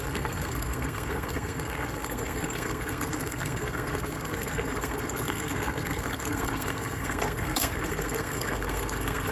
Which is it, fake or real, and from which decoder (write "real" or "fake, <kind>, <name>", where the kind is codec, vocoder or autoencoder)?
fake, codec, SNAC